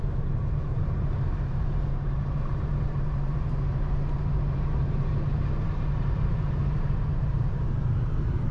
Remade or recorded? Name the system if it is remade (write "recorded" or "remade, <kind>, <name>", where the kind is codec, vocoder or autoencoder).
remade, vocoder, BigVGAN v2